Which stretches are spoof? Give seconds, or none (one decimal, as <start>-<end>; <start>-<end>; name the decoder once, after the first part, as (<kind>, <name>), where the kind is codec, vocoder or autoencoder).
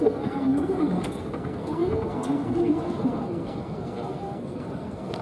0.0-5.2 (codec, SNAC)